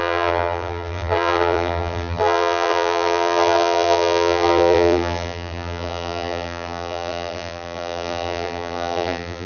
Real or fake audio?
fake